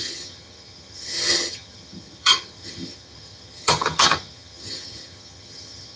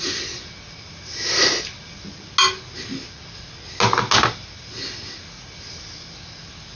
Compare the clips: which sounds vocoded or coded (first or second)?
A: first